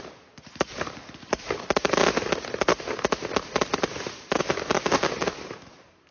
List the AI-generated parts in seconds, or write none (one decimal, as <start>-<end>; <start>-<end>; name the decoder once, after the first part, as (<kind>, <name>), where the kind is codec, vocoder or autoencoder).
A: 0.0-2.0 (vocoder, BigVGAN v2); 4.4-6.1